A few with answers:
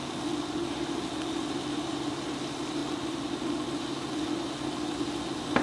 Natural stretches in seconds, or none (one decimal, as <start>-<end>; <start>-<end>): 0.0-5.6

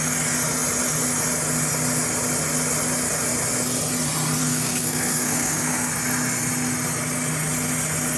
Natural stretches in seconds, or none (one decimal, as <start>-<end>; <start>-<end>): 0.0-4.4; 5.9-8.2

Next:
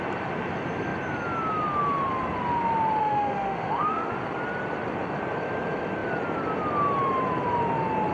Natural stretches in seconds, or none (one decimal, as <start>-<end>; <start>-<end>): 0.0-3.0; 4.1-8.1

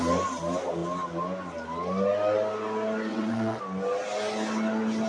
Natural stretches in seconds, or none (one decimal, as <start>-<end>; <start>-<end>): 0.0-3.1; 3.6-5.1

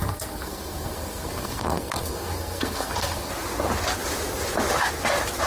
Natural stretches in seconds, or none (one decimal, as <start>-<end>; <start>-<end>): 3.3-5.5

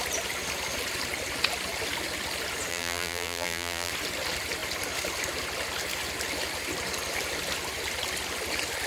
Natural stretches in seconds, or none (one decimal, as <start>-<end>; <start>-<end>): 0.0-2.7; 3.9-8.9